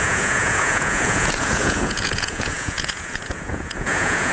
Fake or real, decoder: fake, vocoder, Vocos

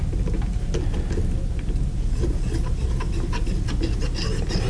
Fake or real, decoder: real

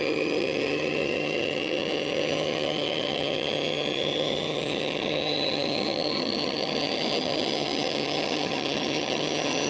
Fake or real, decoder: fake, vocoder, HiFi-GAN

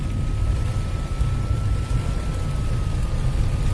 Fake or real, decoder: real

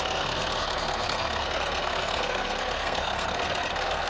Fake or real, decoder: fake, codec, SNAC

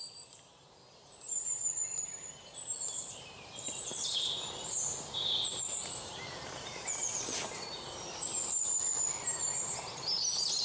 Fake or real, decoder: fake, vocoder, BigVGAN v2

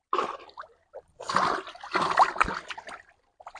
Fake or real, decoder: real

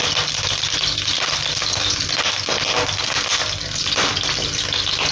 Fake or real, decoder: real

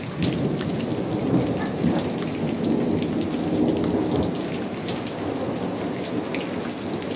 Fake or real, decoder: real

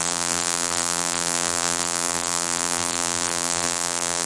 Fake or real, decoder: fake, vocoder, BigVGAN v2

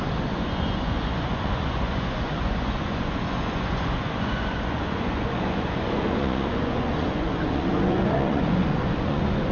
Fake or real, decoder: fake, vocoder, Vocos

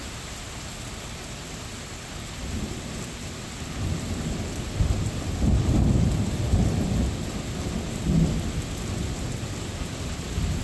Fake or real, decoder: real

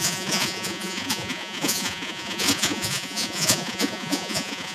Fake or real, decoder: fake, vocoder, Vocos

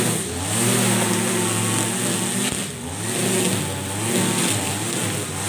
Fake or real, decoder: real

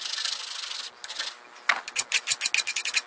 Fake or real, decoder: real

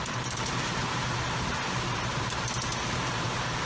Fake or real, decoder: real